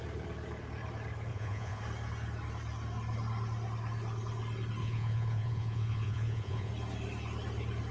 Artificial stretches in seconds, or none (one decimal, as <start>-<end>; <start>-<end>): 1.3-1.8; 4.8-6.7

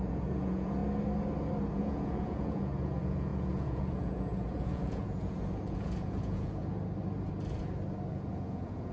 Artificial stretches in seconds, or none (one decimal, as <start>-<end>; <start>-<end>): 0.0-0.8; 1.7-6.6; 8.1-8.9

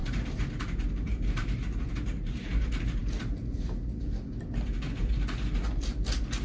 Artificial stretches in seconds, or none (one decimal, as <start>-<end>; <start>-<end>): 0.0-2.5

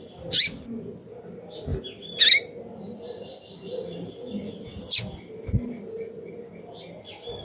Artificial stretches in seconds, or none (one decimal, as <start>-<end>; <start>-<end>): none

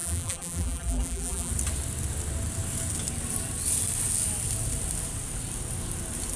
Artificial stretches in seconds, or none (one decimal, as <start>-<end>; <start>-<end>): 0.0-1.5